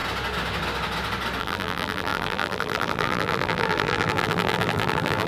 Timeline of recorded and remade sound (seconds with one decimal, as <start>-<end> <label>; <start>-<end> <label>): 0.0-1.4 recorded; 1.4-5.3 remade